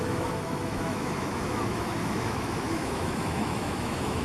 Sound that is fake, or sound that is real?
fake